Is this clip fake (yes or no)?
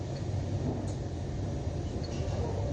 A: no